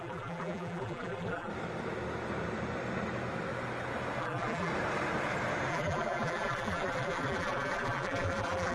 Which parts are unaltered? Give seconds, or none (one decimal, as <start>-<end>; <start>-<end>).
1.5-4.2; 4.7-5.7